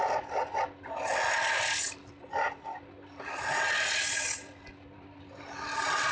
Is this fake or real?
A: real